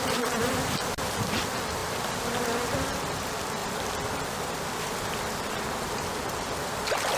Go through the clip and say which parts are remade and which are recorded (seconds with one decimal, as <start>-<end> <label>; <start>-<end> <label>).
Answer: 0.0-1.8 recorded; 1.8-3.2 remade; 3.2-3.6 recorded; 3.6-7.2 remade